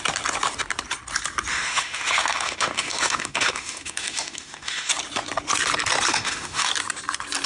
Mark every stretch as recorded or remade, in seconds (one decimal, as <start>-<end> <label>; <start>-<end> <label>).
0.0-1.5 recorded; 1.5-4.9 remade; 4.9-6.1 recorded; 6.1-6.7 remade; 6.7-7.5 recorded